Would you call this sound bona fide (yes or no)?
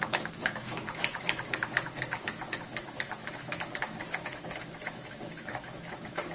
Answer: no